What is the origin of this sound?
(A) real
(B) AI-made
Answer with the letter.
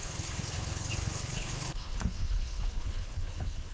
B